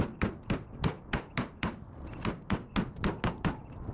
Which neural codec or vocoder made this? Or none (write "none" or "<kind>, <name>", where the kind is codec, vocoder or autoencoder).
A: none